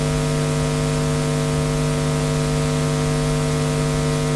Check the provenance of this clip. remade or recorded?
recorded